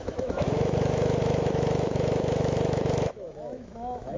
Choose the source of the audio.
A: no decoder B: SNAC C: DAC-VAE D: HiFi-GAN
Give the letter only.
C